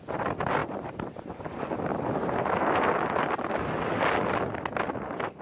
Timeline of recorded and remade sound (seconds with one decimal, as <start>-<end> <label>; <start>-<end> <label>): 0.0-0.6 recorded; 0.6-1.3 remade; 1.3-5.4 recorded